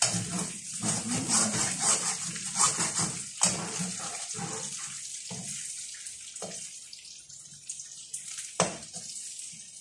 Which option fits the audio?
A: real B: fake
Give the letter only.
A